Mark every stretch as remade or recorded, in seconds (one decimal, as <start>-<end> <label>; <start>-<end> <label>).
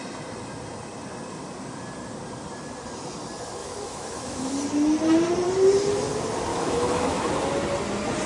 0.0-3.6 recorded; 3.6-4.5 remade; 4.5-6.5 recorded; 6.5-7.3 remade; 7.3-8.3 recorded